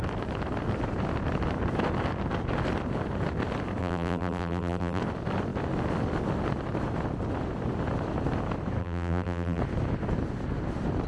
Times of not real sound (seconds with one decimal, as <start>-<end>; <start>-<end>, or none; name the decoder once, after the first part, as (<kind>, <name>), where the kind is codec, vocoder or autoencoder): 3.8-5.0 (vocoder, BigVGAN v2); 8.8-9.6